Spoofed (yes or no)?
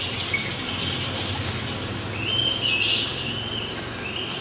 no